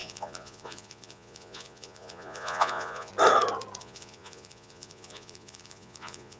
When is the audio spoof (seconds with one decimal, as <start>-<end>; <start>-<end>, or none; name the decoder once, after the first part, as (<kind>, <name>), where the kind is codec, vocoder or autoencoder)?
0.0-3.1 (vocoder, Vocos); 3.8-6.4